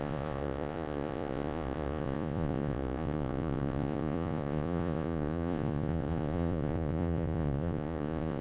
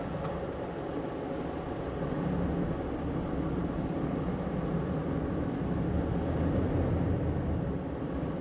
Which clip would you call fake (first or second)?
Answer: first